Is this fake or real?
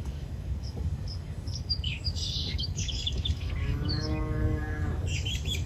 fake